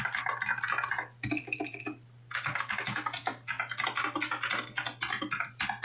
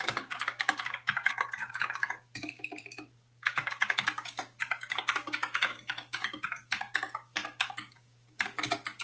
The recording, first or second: first